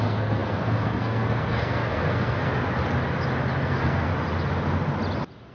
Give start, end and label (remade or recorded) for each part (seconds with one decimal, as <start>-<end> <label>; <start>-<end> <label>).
0.0-2.5 remade; 2.5-3.6 recorded; 3.6-4.1 remade; 4.1-5.5 recorded